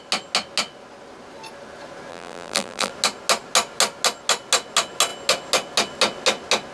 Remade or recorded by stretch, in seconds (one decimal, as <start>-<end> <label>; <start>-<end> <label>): 0.0-2.1 recorded; 2.1-2.9 remade; 2.9-6.7 recorded